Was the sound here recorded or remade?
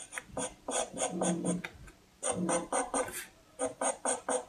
recorded